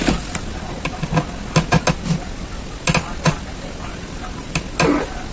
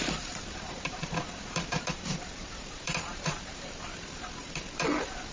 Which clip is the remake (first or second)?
second